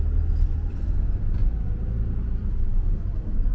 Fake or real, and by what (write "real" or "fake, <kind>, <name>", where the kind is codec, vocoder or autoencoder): real